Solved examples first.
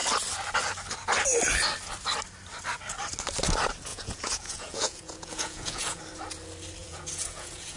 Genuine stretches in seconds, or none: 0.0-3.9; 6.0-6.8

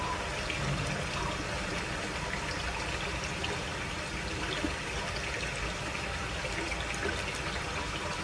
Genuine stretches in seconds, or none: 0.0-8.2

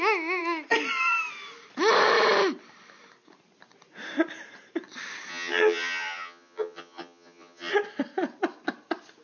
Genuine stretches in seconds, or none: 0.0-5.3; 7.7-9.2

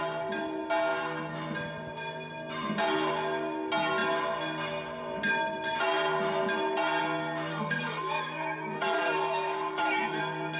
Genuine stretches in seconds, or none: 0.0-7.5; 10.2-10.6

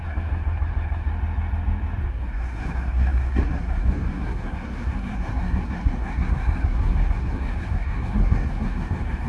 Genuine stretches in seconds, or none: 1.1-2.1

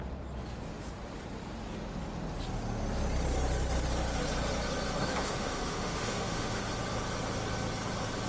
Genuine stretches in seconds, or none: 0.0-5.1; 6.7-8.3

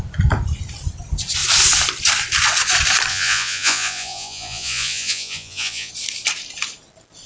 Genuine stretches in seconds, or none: 0.0-3.1; 5.9-7.3